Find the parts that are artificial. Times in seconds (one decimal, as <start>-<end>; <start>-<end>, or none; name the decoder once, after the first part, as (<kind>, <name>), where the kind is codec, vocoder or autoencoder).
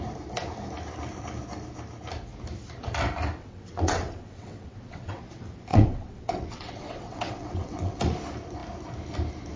3.4-5.2 (vocoder, WaveNeXt); 5.7-8.0